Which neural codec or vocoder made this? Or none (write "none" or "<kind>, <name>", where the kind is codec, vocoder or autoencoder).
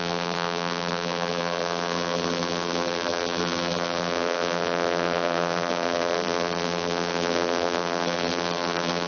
vocoder, BigVGAN v2